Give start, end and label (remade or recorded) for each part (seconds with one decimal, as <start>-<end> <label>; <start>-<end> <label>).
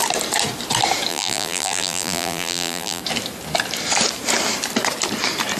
0.0-1.1 recorded; 1.1-3.0 remade; 3.0-5.6 recorded